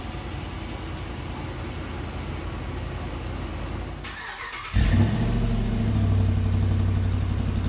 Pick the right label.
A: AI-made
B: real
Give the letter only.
B